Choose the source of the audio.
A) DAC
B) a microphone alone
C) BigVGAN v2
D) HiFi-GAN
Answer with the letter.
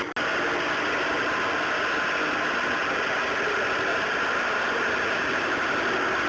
B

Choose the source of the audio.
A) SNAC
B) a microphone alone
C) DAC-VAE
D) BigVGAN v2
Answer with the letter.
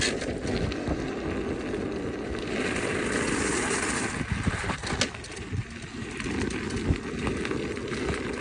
B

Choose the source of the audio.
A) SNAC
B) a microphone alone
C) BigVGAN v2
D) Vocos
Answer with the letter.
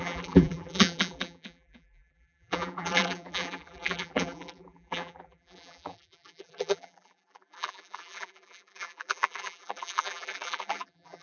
C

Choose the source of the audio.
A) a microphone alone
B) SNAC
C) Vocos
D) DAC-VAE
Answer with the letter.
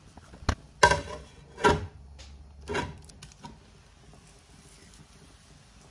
A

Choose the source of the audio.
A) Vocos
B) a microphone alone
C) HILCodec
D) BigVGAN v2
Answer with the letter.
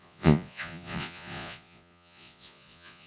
A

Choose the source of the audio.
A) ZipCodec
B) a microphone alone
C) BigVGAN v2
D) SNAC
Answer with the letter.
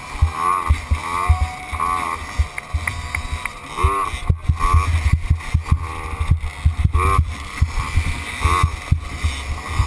B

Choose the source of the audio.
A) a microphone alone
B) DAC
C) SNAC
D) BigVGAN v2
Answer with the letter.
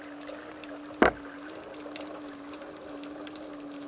A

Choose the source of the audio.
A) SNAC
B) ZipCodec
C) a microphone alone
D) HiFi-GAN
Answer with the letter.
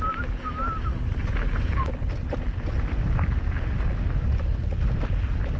C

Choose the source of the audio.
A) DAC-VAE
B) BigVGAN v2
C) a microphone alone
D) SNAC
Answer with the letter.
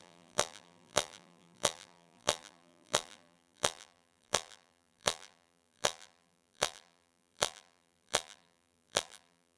B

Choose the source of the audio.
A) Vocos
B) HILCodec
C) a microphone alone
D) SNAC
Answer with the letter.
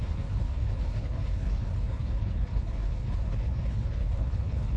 B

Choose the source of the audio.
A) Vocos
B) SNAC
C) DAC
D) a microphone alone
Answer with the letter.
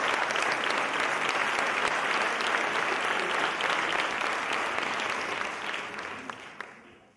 D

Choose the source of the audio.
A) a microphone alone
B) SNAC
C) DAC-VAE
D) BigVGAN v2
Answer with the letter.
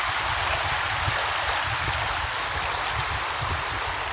A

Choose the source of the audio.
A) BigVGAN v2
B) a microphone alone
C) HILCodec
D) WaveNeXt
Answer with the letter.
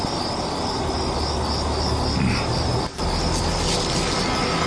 B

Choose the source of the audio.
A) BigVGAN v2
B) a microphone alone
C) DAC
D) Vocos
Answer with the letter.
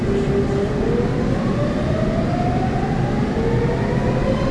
B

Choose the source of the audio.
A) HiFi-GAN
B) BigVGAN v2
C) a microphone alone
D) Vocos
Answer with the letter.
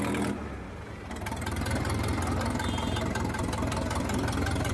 C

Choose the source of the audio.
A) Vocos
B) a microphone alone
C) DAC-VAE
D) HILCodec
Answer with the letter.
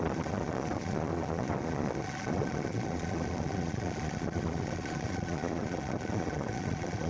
A